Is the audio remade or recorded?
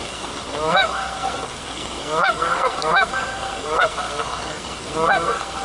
remade